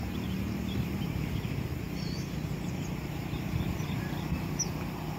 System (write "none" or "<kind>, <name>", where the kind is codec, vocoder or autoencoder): vocoder, BigVGAN v2